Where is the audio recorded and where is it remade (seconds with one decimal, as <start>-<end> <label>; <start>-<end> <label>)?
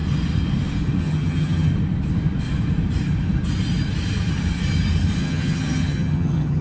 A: 0.0-1.0 recorded; 1.0-1.7 remade; 1.7-5.2 recorded; 5.2-6.6 remade